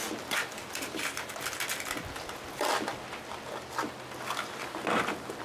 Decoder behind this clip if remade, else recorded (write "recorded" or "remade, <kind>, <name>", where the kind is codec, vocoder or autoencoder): recorded